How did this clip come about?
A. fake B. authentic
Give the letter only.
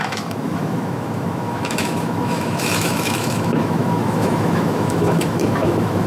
A